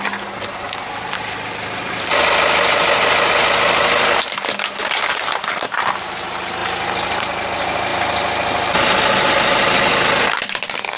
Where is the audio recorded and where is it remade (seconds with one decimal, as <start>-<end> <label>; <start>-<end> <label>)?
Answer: 0.0-11.0 recorded